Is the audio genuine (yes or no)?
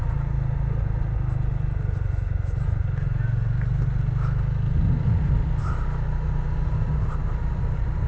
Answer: yes